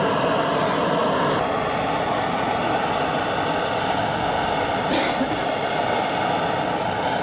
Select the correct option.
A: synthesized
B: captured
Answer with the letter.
B